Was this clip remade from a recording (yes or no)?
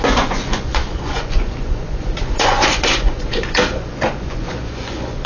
yes